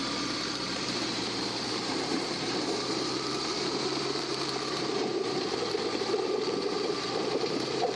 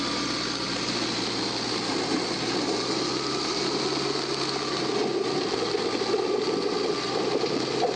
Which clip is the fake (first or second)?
first